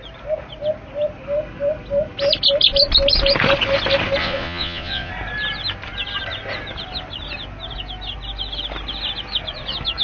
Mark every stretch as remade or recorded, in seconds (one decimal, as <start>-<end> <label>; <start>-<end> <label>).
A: 0.0-4.2 recorded; 4.2-5.1 remade; 5.1-10.0 recorded

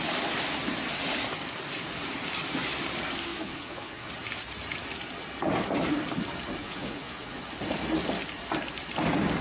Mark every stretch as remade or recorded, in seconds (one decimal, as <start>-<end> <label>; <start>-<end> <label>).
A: 0.0-3.3 recorded; 3.3-4.1 remade; 4.1-6.6 recorded; 6.6-7.4 remade; 7.4-9.4 recorded

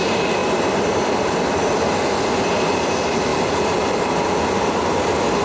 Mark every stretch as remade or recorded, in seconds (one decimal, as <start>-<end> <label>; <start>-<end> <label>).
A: 0.0-5.4 recorded